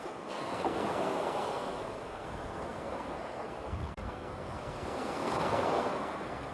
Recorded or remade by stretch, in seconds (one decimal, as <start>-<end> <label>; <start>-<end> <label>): 0.0-6.5 remade